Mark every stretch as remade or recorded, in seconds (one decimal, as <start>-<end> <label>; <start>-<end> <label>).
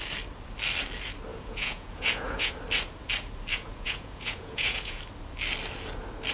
0.0-1.3 recorded; 1.3-2.5 remade; 2.5-3.5 recorded; 3.5-5.0 remade; 5.0-6.3 recorded